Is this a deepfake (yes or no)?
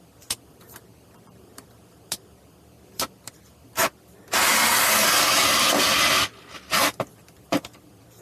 no